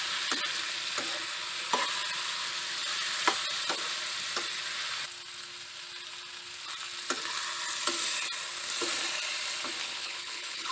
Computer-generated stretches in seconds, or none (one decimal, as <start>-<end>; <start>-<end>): 9.8-10.7